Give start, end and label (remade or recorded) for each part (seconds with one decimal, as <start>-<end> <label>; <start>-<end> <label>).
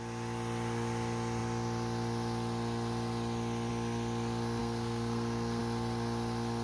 0.0-4.6 recorded; 4.6-5.6 remade; 5.6-6.6 recorded